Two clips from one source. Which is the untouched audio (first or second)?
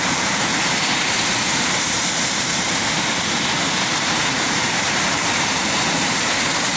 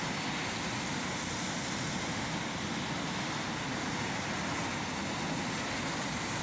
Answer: second